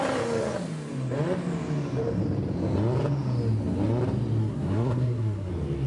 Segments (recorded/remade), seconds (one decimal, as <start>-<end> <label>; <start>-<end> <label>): 0.0-4.4 recorded; 4.4-5.5 remade; 5.5-5.9 recorded